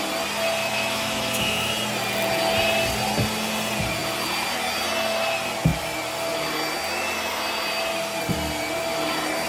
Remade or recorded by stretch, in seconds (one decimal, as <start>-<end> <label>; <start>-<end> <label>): 0.0-0.6 recorded; 0.6-1.7 remade; 1.7-9.5 recorded